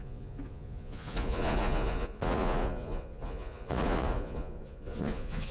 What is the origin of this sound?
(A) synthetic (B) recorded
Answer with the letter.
A